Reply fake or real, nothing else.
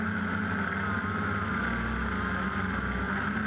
real